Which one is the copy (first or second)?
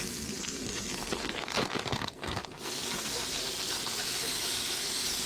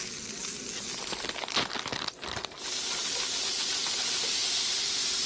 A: first